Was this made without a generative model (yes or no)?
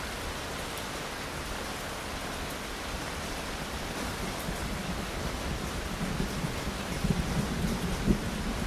yes